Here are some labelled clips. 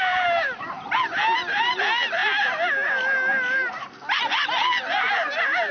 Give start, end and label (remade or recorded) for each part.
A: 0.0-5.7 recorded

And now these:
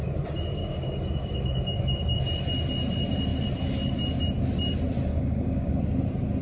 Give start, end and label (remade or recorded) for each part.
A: 0.0-0.6 recorded; 0.6-2.2 remade; 2.2-5.1 recorded; 5.1-5.8 remade; 5.8-6.4 recorded

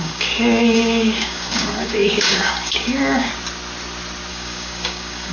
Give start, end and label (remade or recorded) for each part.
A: 0.0-3.3 remade; 3.3-4.3 recorded; 4.3-5.3 remade

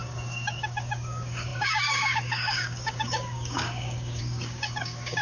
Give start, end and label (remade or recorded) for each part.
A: 0.0-5.2 remade